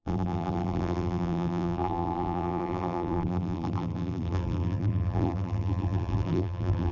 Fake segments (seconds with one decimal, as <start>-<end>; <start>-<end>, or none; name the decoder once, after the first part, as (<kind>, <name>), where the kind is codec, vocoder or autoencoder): 0.0-6.9 (vocoder, BigVGAN v2)